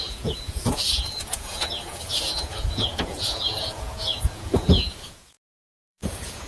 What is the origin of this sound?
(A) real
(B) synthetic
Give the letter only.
B